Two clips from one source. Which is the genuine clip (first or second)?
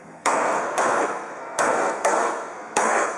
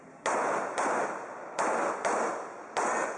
second